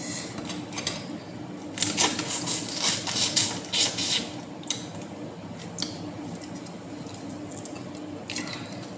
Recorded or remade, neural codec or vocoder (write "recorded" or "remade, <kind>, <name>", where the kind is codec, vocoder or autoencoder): recorded